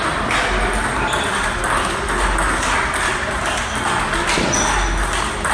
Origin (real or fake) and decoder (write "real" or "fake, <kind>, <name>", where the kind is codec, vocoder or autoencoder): real